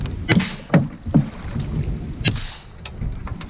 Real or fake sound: real